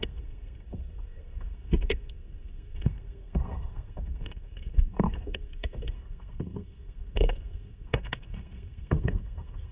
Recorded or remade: remade